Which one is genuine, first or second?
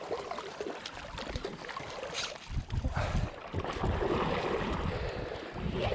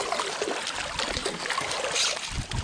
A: second